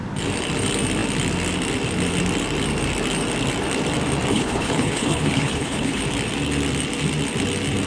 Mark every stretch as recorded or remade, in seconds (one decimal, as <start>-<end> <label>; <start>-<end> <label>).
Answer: 0.0-4.3 recorded; 4.3-6.0 remade; 6.0-7.9 recorded